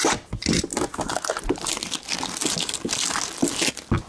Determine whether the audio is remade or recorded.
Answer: recorded